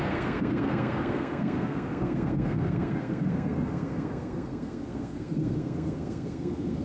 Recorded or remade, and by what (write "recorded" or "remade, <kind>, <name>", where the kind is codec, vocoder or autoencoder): remade, codec, SNAC